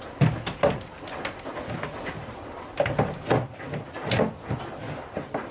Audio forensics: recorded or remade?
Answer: recorded